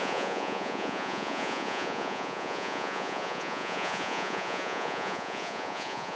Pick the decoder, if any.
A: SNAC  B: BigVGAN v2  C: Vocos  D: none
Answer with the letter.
C